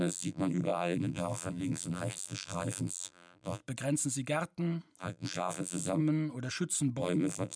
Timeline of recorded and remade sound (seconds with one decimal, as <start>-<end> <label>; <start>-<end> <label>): 0.0-3.6 remade; 3.6-5.0 recorded; 5.0-6.0 remade; 6.0-7.0 recorded; 7.0-7.6 remade